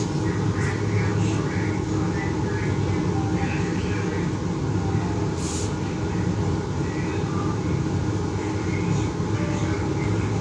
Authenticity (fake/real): real